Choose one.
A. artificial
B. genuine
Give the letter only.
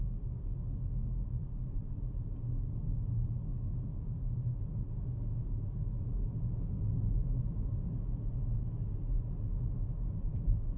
B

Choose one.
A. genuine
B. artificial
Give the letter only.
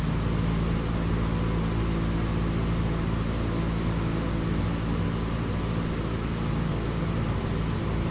A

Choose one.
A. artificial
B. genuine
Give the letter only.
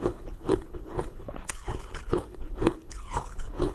A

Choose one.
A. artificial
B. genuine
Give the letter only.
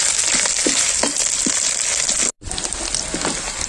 B